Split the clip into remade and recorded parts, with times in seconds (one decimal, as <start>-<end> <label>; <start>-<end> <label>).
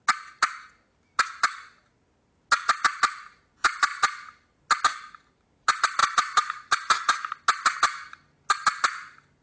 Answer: 0.0-9.4 recorded